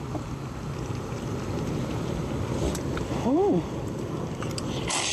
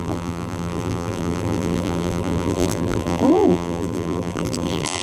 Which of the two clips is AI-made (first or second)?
second